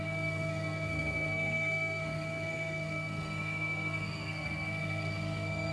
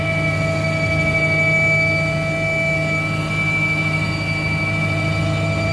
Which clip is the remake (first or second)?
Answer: first